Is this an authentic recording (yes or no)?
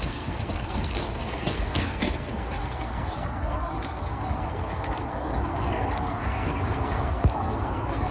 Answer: no